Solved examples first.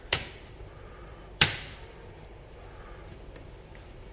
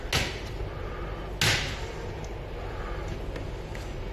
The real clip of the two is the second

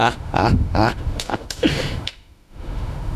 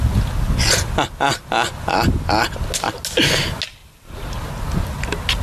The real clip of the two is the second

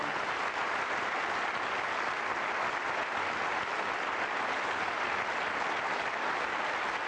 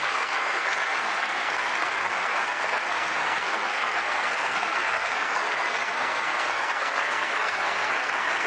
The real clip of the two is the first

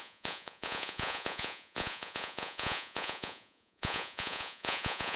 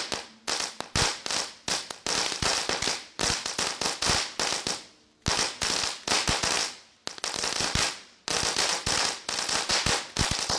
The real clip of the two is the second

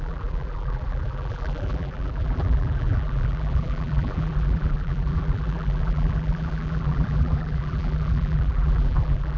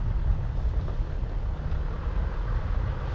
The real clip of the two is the second